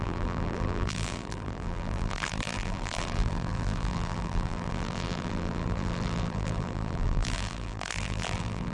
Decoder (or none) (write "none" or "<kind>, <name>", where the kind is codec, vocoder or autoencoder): vocoder, BigVGAN v2